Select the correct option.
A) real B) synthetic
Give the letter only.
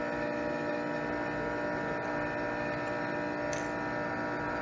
A